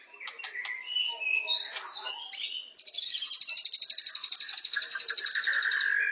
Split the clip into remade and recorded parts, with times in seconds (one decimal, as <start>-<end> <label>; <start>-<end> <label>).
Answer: 0.0-6.1 recorded